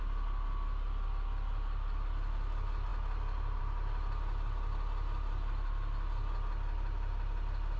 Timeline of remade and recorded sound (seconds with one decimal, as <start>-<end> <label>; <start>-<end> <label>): 0.0-7.8 recorded